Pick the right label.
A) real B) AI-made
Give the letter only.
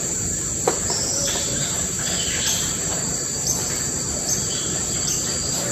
B